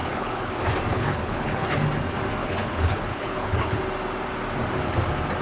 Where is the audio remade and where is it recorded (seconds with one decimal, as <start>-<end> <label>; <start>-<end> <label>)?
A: 0.0-0.5 remade; 0.5-0.9 recorded; 0.9-1.8 remade; 1.8-2.4 recorded; 2.4-3.8 remade; 3.8-5.4 recorded